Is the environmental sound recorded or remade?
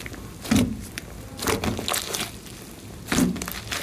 recorded